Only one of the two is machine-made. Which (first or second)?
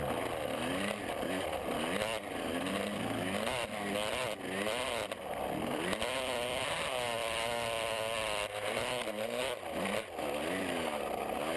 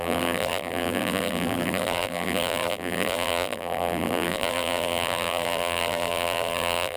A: second